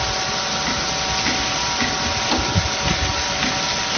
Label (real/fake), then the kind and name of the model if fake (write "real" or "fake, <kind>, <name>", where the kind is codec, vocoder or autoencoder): real